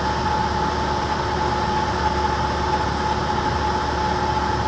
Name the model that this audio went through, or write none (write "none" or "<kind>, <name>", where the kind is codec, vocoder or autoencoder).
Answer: none